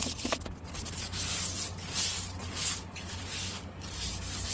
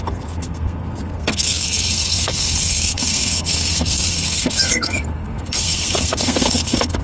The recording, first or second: first